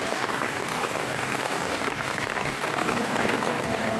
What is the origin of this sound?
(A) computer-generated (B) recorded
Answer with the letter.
A